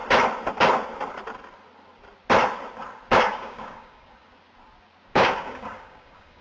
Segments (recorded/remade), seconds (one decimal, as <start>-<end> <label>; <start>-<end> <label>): 0.0-3.1 recorded; 3.1-4.1 remade; 4.1-5.1 recorded; 5.1-6.4 remade